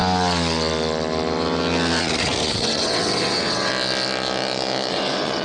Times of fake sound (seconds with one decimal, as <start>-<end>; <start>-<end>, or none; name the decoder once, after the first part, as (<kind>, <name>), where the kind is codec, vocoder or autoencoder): 2.0-3.7 (vocoder, WaveNeXt); 4.9-5.4